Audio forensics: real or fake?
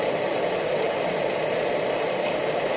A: real